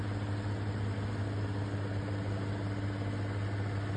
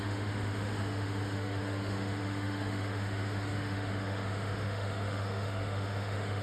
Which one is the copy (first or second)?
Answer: second